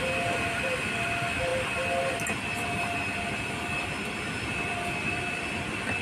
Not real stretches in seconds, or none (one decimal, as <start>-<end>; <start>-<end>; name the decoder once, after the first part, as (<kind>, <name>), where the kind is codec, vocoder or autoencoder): none